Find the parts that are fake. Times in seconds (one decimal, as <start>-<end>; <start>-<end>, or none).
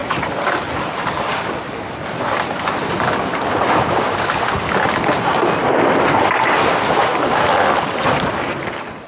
none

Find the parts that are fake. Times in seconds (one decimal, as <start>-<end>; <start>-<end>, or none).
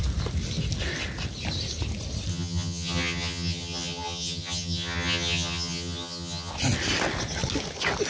2.3-6.5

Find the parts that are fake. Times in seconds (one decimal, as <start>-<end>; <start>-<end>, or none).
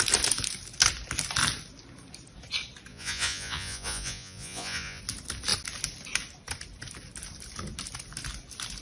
2.9-5.0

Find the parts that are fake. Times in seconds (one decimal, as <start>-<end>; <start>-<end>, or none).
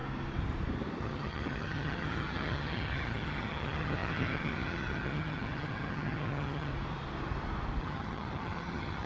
1.0-6.7; 7.8-9.1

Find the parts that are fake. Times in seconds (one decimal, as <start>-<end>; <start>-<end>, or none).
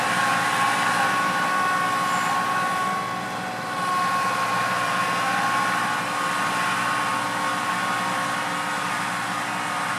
none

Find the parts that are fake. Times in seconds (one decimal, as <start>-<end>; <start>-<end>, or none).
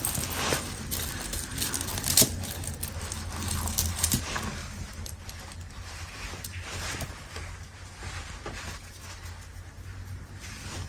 4.6-5.2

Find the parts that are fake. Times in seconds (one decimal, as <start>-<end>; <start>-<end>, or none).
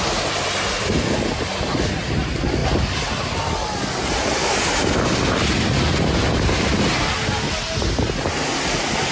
none